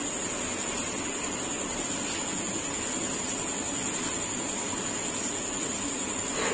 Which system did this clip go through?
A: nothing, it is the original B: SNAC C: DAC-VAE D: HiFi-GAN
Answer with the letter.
A